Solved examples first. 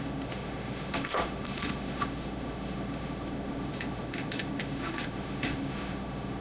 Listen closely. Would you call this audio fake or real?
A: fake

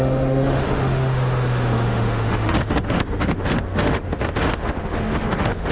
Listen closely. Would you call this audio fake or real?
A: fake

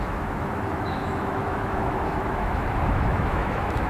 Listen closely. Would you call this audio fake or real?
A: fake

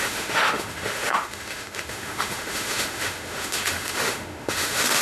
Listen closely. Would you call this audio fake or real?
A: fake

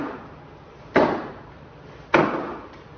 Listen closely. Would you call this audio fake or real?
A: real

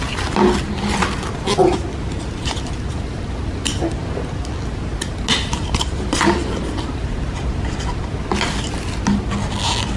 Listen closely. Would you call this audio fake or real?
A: real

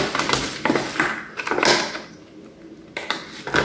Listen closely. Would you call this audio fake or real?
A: real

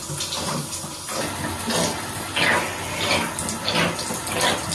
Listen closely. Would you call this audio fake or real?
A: real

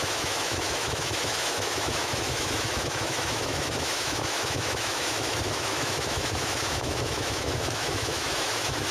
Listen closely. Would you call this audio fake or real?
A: fake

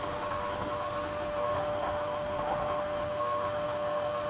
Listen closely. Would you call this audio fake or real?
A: fake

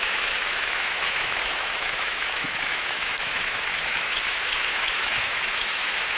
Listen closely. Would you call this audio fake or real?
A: fake